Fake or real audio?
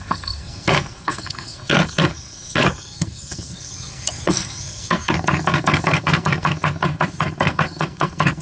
fake